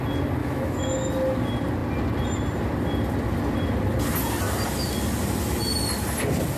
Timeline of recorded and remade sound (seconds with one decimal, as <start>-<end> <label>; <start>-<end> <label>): 0.0-0.4 recorded; 0.4-1.1 remade; 1.1-6.6 recorded